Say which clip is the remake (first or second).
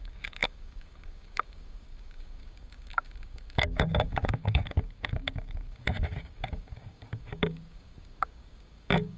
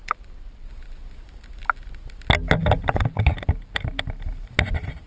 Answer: first